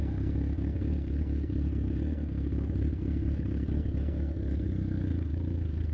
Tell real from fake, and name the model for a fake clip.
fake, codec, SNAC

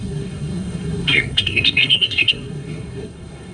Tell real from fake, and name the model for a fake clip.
fake, codec, SNAC